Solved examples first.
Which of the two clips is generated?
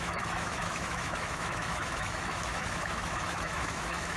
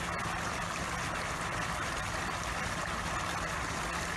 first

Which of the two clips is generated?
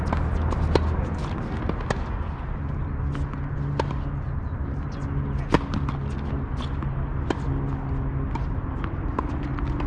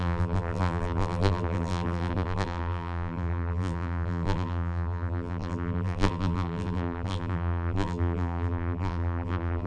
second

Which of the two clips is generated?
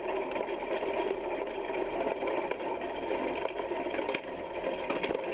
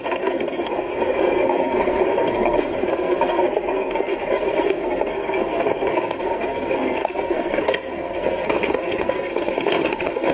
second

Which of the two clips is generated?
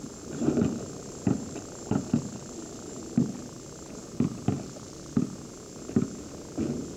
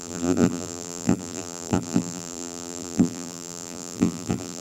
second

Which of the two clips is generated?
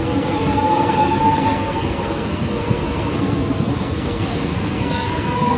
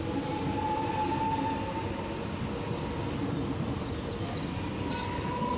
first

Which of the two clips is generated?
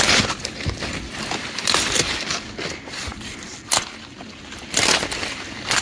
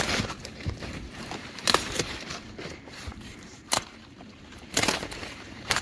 second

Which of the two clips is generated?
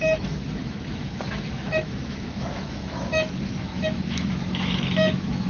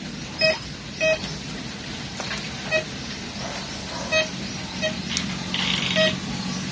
first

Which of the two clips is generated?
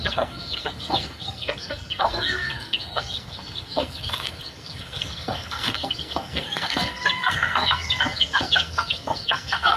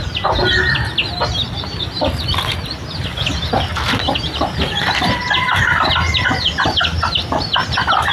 first